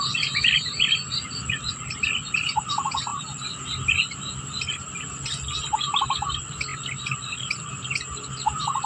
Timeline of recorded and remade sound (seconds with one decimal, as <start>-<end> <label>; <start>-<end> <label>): 0.0-8.8 recorded